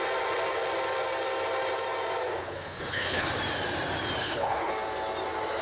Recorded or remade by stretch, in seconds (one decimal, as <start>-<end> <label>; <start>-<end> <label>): 0.0-2.4 recorded; 2.4-3.3 remade; 3.3-4.2 recorded; 4.2-4.7 remade; 4.7-5.6 recorded